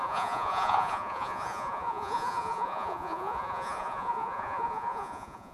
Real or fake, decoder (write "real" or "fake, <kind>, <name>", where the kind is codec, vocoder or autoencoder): fake, vocoder, Vocos